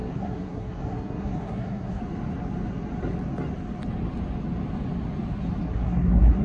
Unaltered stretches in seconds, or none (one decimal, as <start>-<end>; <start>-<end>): 2.0-5.6